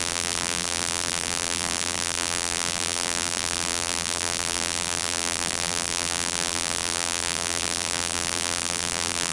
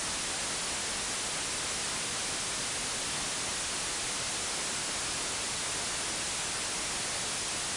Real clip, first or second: second